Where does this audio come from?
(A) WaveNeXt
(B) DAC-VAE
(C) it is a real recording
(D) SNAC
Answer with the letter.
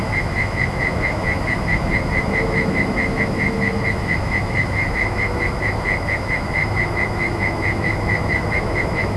B